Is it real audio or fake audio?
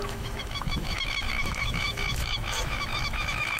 fake